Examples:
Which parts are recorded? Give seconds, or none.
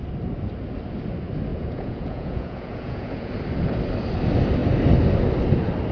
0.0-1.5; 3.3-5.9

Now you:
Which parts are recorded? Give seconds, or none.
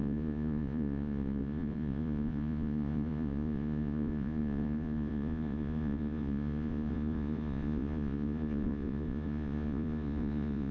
none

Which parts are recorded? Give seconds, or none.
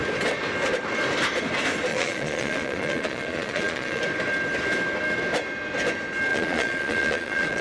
0.0-1.9; 4.0-6.3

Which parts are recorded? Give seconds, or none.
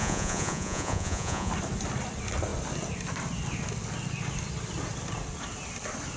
1.5-6.2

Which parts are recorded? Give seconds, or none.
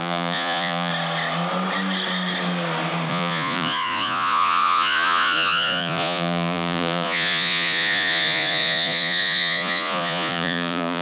0.9-3.1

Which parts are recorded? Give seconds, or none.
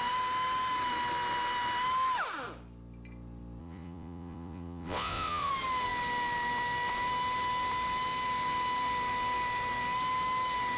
0.0-3.6; 5.5-10.8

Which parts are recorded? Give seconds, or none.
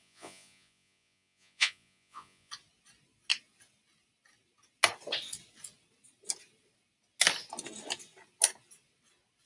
2.5-9.5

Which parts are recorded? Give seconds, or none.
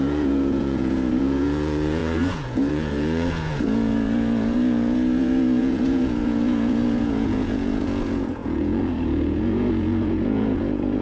none